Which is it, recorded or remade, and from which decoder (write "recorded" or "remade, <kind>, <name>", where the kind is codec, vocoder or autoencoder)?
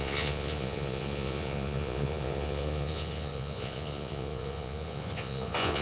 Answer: remade, vocoder, Vocos